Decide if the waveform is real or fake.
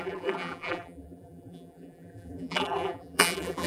fake